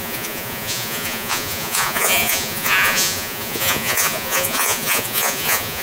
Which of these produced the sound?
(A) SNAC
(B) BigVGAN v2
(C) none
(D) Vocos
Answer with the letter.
D